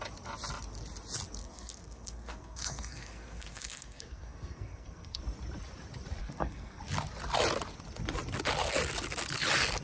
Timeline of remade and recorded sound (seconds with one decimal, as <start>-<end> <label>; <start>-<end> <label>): 0.0-1.4 recorded; 1.4-5.2 remade; 5.2-6.2 recorded; 6.2-6.8 remade; 6.8-9.8 recorded